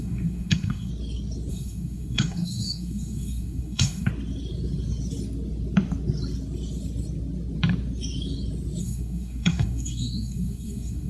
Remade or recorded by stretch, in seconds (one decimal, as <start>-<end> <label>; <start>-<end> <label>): 0.0-0.9 remade; 0.9-1.5 recorded; 1.5-4.1 remade; 4.1-8.8 recorded; 8.8-11.1 remade